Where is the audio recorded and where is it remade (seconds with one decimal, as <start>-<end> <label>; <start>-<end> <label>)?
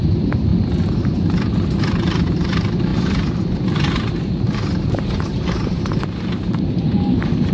0.0-0.5 remade; 0.5-1.8 recorded; 1.8-7.5 remade